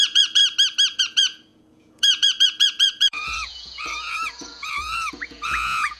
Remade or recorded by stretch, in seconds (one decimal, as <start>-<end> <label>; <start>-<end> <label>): 0.0-0.4 remade; 0.4-1.0 recorded; 1.0-6.0 remade